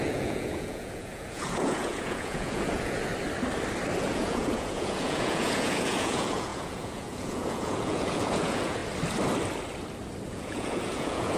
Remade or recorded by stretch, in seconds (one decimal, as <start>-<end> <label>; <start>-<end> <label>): 0.0-3.1 remade; 3.1-4.0 recorded; 4.0-8.8 remade; 8.8-10.3 recorded; 10.3-11.4 remade